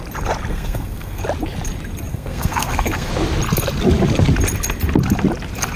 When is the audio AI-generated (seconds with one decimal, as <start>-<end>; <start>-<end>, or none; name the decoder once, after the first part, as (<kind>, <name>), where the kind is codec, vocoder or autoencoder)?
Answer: 0.5-1.2 (codec, SNAC); 2.1-3.1